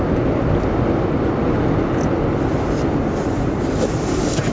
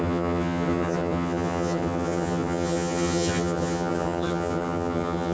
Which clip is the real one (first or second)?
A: first